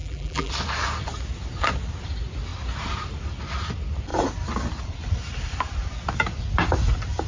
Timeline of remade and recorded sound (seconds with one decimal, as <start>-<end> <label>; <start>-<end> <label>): 0.0-0.5 remade; 0.5-7.3 recorded